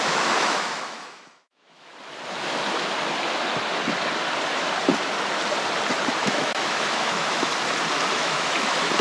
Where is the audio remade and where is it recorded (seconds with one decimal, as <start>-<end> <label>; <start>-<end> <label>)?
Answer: 0.0-1.9 remade; 1.9-6.2 recorded; 6.2-7.5 remade; 7.5-8.1 recorded; 8.1-9.0 remade